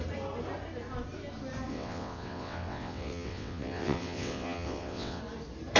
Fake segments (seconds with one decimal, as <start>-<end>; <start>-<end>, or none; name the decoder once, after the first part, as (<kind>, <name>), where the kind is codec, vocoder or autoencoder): 1.7-5.2 (vocoder, WaveNeXt)